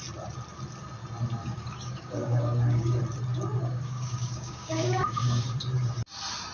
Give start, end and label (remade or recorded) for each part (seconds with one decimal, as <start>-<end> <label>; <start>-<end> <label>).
0.0-1.4 recorded; 1.4-3.0 remade; 3.0-3.6 recorded; 3.6-5.5 remade; 5.5-6.5 recorded